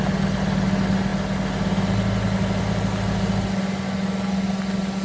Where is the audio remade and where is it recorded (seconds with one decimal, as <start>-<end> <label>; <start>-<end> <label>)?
0.0-5.0 recorded